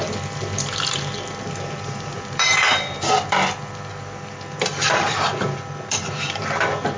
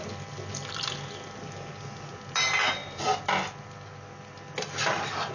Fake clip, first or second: first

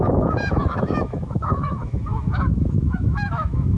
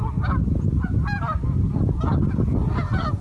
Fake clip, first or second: first